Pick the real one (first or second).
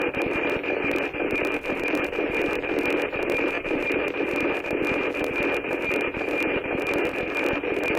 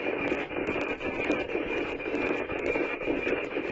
first